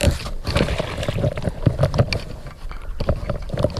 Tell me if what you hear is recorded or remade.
recorded